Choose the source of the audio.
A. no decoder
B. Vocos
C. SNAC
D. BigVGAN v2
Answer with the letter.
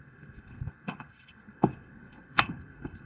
C